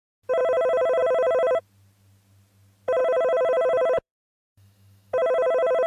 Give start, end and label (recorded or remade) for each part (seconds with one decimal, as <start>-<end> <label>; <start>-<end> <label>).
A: 0.0-3.0 recorded; 3.0-5.9 remade